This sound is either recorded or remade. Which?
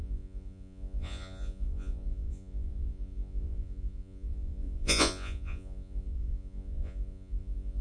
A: remade